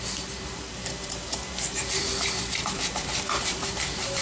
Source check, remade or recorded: remade